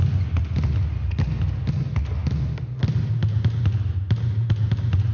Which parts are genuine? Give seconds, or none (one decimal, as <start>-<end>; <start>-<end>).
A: 0.0-5.1

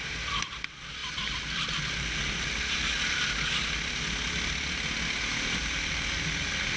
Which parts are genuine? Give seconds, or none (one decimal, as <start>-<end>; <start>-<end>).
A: 0.0-6.8

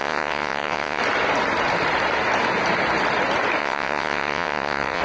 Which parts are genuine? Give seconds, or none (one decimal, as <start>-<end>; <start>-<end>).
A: 1.0-3.6

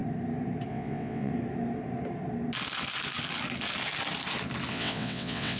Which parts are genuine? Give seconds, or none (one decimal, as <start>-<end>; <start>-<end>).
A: 0.0-0.7; 1.3-4.7

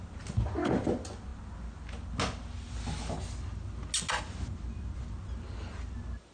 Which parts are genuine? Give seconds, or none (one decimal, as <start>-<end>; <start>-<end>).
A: 0.0-6.3

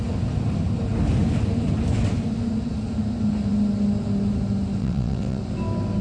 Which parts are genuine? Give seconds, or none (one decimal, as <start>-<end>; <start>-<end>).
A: 0.0-4.8; 5.4-6.0